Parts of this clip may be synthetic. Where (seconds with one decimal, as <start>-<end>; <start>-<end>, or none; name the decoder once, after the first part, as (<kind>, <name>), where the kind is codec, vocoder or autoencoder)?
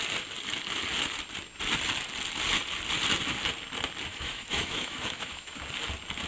4.1-5.6 (autoencoder, DAC-VAE)